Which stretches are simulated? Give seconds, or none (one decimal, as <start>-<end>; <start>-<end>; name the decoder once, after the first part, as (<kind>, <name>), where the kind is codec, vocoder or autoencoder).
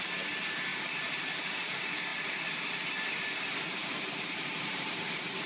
0.7-1.4 (vocoder, BigVGAN v2); 3.8-5.0